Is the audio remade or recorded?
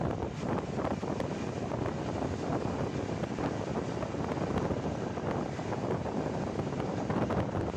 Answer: recorded